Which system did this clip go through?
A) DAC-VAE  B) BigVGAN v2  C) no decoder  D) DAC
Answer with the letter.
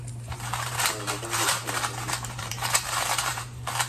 B